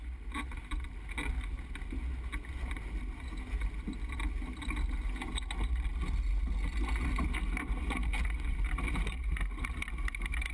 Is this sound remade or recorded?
recorded